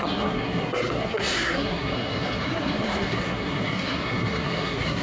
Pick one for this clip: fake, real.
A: fake